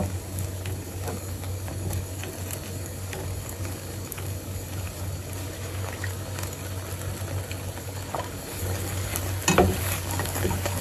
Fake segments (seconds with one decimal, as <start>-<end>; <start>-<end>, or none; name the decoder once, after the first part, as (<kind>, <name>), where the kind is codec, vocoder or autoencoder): 0.0-2.2 (codec, DAC); 2.7-6.6; 7.8-9.1; 9.8-10.8